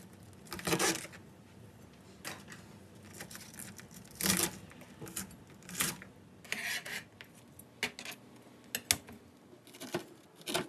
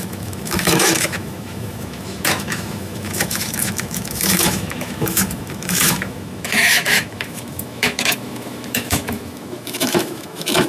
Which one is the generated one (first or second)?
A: second